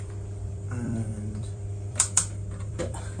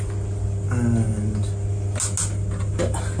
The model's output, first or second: first